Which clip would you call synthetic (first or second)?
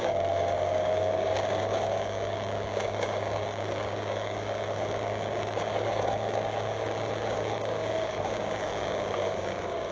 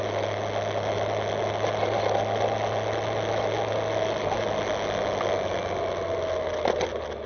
first